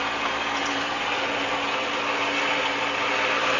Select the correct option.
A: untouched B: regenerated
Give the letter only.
A